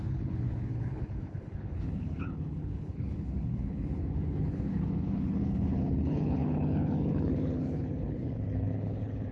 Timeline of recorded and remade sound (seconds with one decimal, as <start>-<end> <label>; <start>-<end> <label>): 0.0-9.3 remade